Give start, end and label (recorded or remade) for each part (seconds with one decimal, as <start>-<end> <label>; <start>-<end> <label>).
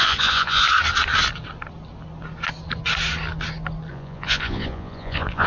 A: 0.0-0.6 remade; 0.6-3.9 recorded; 3.9-5.5 remade